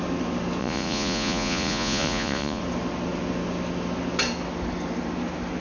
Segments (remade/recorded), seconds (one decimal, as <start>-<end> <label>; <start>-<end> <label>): 0.0-0.6 recorded; 0.6-2.6 remade; 2.6-5.6 recorded